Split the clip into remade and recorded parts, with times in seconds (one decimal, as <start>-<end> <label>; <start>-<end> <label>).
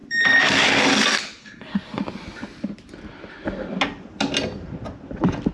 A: 0.0-1.4 recorded; 1.4-2.0 remade; 2.0-5.5 recorded